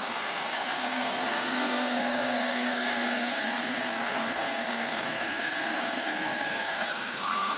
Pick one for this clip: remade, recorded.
remade